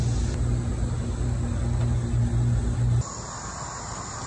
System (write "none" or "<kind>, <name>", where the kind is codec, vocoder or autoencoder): none